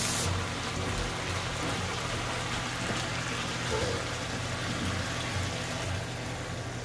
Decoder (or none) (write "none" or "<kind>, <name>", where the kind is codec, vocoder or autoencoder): none